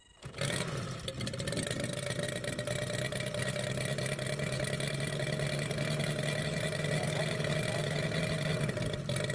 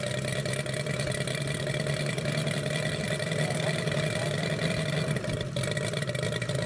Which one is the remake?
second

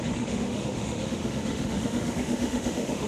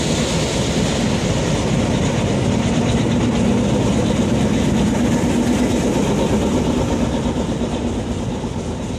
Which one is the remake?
first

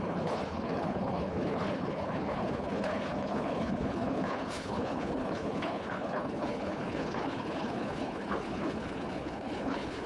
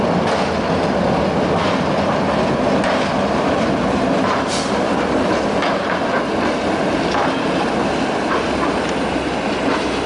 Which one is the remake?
first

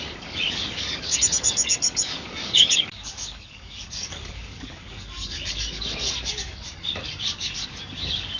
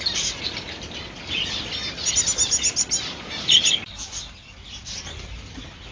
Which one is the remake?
first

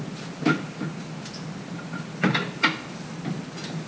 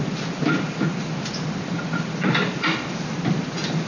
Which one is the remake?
second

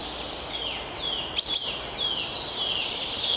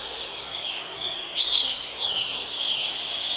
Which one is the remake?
second